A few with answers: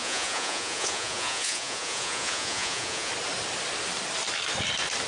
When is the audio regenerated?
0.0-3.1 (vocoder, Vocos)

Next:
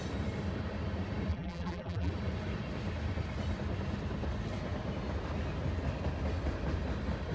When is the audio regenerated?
1.3-2.1 (vocoder, BigVGAN v2)

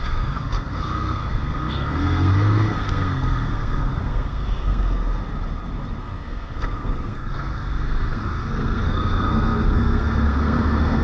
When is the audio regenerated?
0.0-5.2 (codec, SNAC); 6.0-11.0

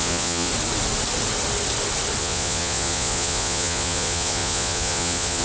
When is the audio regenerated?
0.0-0.5 (vocoder, Vocos); 2.2-5.4

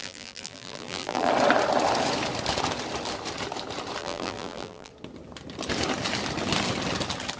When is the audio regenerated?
0.0-1.3 (vocoder, BigVGAN v2); 4.0-4.9

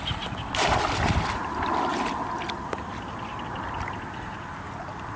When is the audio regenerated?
none